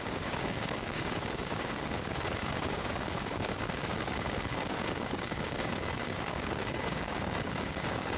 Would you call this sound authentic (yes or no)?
no